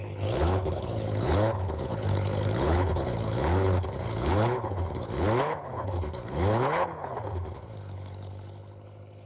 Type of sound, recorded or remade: remade